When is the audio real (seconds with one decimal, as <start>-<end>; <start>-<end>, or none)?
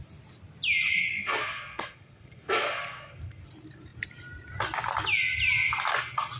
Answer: 0.0-1.1; 3.4-6.4